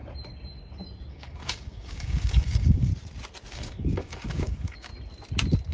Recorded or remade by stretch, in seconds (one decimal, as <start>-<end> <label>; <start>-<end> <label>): 0.0-1.1 recorded; 1.1-2.9 remade; 2.9-3.5 recorded; 3.5-4.9 remade; 4.9-5.7 recorded